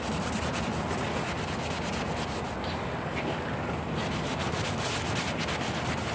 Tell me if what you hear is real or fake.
real